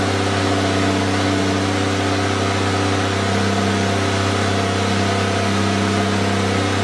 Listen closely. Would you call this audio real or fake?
real